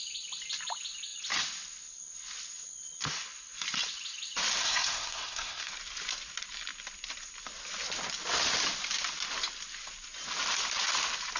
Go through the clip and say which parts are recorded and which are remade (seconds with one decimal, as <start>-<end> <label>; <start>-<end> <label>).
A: 0.0-4.6 recorded; 4.6-5.7 remade; 5.7-11.4 recorded